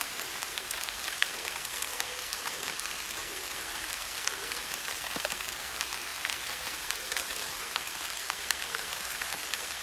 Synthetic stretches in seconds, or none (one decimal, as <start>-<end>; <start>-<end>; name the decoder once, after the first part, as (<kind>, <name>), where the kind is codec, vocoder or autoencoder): 0.0-9.8 (codec, SNAC)